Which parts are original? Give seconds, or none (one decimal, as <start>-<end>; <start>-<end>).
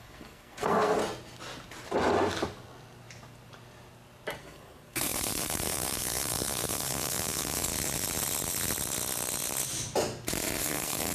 1.0-4.4; 7.7-10.6